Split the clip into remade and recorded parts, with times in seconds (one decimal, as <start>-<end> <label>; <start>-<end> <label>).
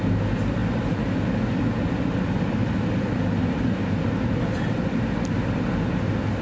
0.0-6.4 recorded